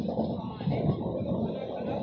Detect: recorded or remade recorded